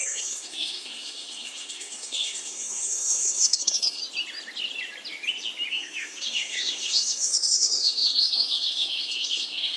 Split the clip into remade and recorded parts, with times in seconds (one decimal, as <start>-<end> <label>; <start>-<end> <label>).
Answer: 0.0-4.0 remade; 4.0-5.7 recorded; 5.7-9.8 remade